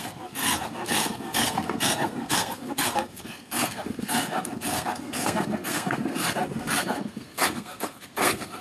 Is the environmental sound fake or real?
fake